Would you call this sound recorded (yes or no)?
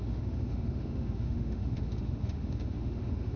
no